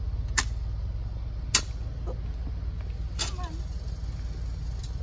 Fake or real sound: real